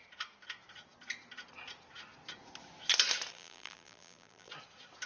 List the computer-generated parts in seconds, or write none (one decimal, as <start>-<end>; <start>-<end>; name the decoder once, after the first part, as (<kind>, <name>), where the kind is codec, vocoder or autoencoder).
3.3-4.5 (vocoder, BigVGAN v2)